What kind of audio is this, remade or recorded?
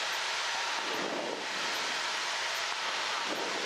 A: recorded